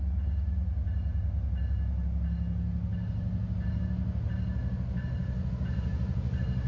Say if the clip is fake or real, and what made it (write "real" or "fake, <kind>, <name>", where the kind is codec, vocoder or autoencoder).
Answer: real